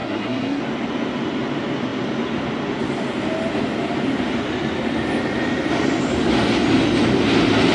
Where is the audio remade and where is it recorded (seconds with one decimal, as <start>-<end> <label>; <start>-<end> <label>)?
0.0-0.6 remade; 0.6-7.7 recorded